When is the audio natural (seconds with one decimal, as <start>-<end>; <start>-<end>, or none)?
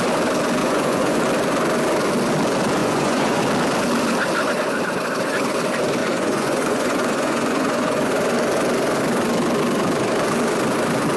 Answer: 0.0-0.6; 1.2-2.8; 3.4-6.0; 8.1-11.2